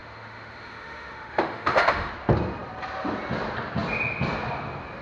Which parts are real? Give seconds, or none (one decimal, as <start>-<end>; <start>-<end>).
2.1-5.0